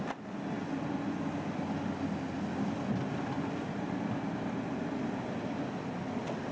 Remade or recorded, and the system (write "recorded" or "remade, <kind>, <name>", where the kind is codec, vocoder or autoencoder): recorded